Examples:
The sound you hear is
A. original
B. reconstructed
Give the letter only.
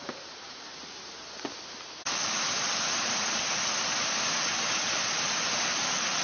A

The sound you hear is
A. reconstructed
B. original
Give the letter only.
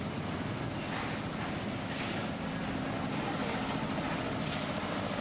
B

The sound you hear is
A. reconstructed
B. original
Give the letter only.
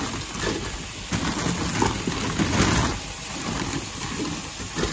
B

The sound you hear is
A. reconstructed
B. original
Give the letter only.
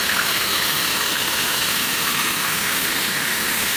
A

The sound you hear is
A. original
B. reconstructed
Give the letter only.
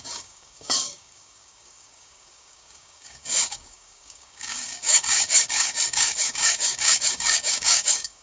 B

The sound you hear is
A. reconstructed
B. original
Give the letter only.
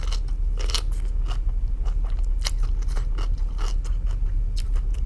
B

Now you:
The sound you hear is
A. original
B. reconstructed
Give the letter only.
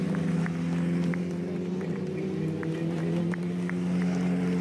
A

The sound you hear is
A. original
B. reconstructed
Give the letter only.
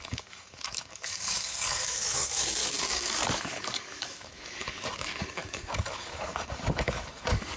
B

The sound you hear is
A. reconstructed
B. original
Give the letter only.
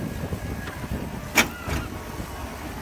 B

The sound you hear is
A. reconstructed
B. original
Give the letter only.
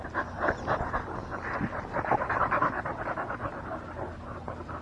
B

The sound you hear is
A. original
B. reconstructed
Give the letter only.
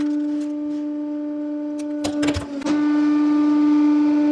A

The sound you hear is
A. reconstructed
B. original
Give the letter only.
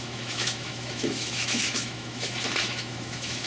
A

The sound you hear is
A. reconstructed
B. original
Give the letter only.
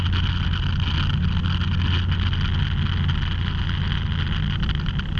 B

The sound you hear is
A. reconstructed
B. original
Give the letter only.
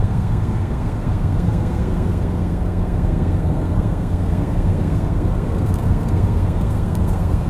A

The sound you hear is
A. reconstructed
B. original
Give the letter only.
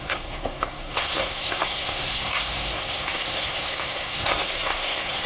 A